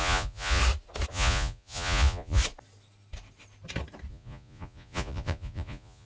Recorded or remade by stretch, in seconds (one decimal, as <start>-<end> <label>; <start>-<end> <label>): 0.0-0.6 remade; 0.6-1.1 recorded; 1.1-2.4 remade; 2.4-4.1 recorded; 4.1-6.1 remade